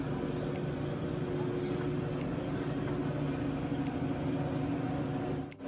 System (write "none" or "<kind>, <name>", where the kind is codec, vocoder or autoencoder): none